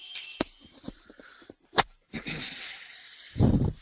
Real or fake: fake